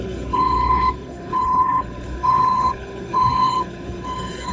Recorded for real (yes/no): no